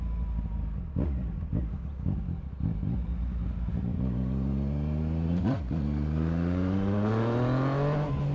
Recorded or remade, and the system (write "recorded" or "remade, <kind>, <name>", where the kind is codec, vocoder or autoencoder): recorded